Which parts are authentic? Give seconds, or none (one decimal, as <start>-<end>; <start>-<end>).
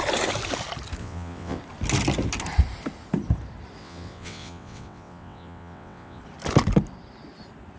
0.0-1.0; 1.6-3.8; 6.2-7.8